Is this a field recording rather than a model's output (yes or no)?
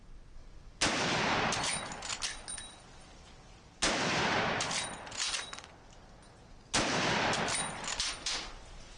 yes